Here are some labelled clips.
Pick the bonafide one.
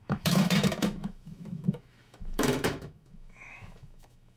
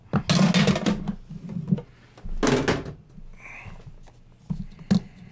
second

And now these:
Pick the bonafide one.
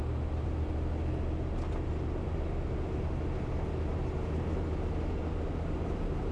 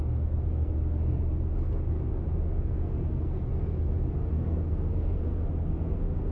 first